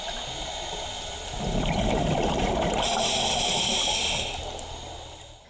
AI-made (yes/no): no